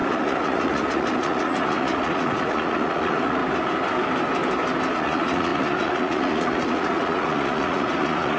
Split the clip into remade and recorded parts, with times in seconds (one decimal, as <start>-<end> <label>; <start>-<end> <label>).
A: 0.0-3.4 remade; 3.4-4.9 recorded; 4.9-8.4 remade